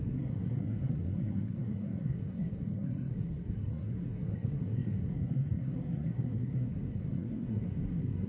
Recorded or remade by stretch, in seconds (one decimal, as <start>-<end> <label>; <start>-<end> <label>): 0.0-8.3 remade